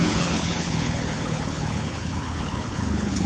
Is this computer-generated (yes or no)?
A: yes